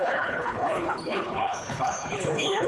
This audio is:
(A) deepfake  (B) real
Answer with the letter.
A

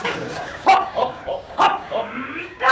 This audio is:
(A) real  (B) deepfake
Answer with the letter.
B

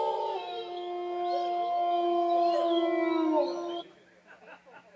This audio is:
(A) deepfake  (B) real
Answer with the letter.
B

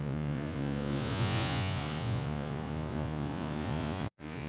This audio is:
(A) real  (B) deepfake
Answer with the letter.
B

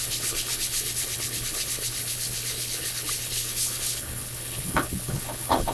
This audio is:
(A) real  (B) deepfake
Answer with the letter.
B